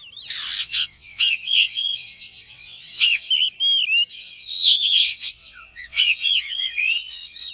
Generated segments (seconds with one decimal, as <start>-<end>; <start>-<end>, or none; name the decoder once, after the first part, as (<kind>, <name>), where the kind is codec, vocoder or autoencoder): 0.6-3.3 (vocoder, WaveNeXt); 4.1-7.5